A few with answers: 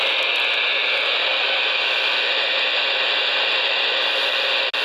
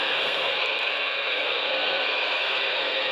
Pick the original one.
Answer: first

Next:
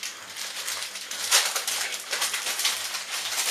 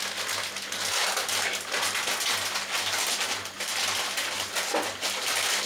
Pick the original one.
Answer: second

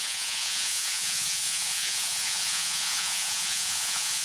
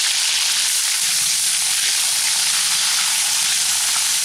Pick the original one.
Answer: second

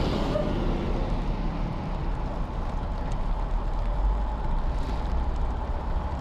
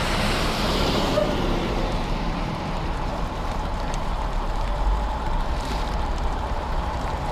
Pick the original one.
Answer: first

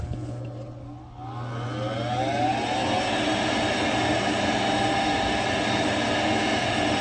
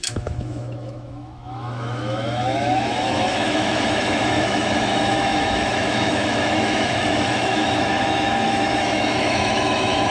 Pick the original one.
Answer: first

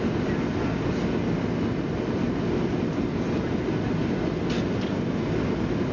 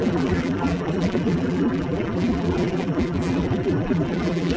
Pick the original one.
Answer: first